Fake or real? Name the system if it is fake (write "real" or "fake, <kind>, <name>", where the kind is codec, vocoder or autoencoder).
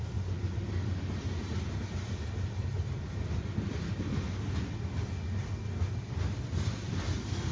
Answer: real